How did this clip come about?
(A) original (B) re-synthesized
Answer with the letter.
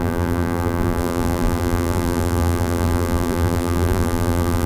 B